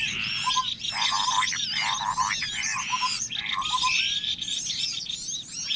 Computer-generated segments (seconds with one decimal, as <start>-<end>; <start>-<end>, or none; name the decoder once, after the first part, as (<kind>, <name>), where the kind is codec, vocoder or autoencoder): none

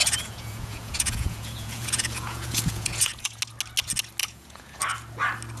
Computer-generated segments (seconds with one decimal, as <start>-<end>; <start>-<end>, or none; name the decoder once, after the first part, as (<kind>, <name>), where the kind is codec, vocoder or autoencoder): 0.0-3.4 (vocoder, Vocos); 4.2-4.8

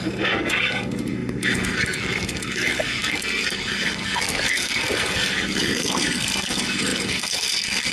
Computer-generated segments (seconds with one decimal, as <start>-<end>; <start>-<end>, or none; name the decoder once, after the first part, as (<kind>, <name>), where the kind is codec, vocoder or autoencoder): 0.0-7.9 (codec, SNAC)

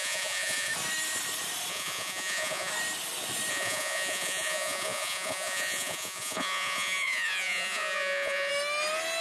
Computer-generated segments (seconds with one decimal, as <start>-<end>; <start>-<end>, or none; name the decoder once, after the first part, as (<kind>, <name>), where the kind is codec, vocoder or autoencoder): 0.0-0.7 (vocoder, Vocos); 1.7-2.7; 3.5-8.5

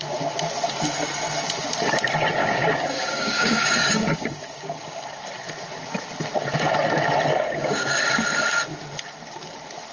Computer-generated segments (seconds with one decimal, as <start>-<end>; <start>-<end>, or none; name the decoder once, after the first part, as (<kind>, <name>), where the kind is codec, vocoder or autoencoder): 2.4-5.2 (codec, DAC); 7.3-8.1

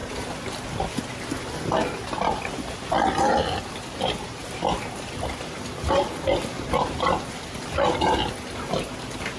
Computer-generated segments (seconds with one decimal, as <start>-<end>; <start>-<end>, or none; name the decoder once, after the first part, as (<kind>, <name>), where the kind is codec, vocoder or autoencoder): 0.0-1.0 (vocoder, BigVGAN v2)